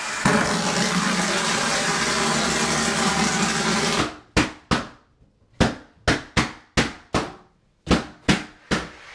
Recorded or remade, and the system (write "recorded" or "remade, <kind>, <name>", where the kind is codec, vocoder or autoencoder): recorded